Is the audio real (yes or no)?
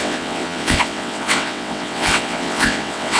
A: no